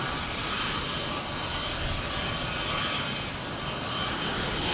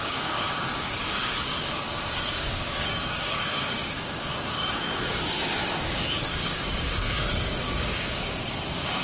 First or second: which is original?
first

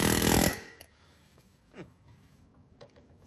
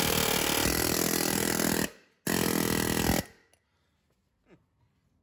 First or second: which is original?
second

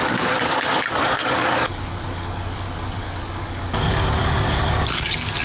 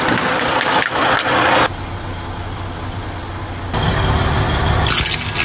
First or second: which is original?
second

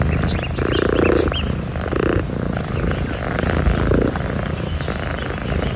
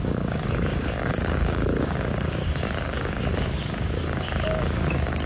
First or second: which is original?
first